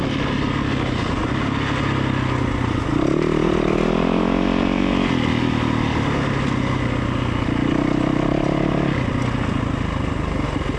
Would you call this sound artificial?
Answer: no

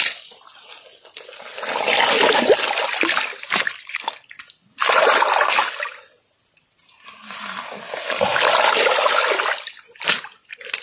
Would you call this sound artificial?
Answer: no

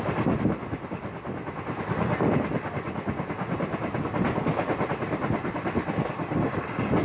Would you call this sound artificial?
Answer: no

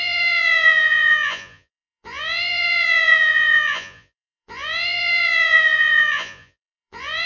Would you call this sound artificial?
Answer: yes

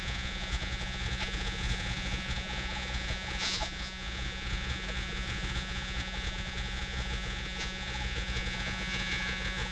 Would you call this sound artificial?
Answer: yes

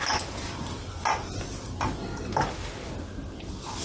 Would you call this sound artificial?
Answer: no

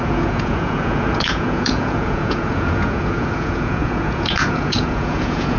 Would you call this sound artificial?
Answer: yes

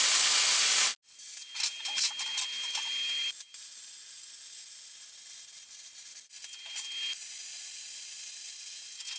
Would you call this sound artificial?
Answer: no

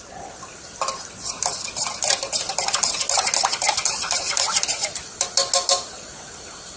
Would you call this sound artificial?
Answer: no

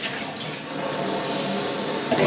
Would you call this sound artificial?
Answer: no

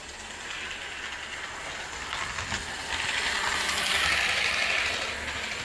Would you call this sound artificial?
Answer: no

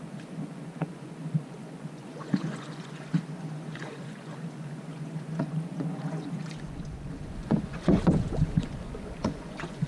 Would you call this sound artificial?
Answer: yes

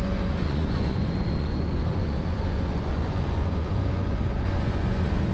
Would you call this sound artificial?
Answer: yes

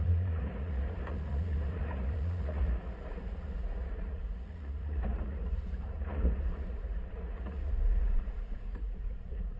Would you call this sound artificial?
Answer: yes